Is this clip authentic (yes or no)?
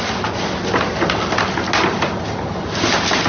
yes